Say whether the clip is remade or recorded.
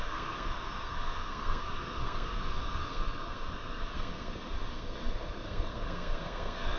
remade